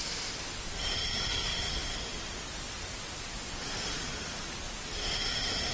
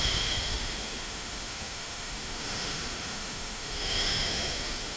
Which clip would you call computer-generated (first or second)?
second